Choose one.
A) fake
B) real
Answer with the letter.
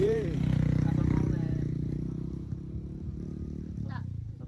A